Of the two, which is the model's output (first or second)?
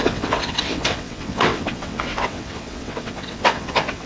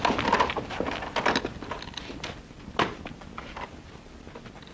first